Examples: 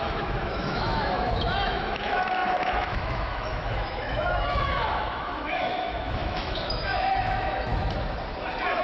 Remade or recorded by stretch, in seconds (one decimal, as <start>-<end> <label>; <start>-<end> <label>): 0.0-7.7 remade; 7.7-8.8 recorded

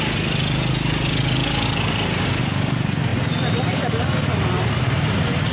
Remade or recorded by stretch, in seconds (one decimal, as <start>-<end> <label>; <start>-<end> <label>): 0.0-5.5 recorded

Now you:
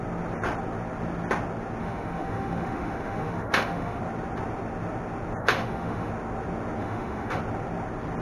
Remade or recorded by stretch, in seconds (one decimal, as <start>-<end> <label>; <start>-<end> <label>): 0.0-1.8 recorded; 1.8-4.0 remade; 4.0-5.4 recorded; 5.4-6.1 remade; 6.1-6.8 recorded; 6.8-7.4 remade; 7.4-8.2 recorded

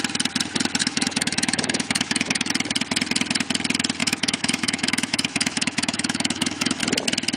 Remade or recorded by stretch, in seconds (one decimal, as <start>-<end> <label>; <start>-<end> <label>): 0.0-0.8 recorded; 0.8-2.5 remade; 2.5-4.0 recorded; 4.0-6.8 remade; 6.8-7.4 recorded